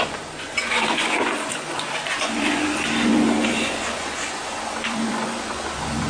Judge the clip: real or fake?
fake